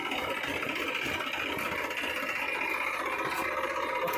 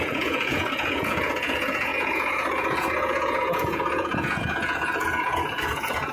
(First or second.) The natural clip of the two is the first